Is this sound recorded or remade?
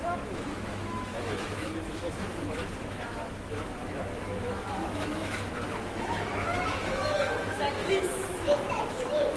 remade